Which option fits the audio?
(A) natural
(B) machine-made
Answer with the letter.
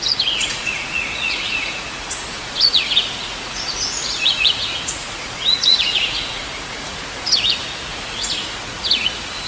B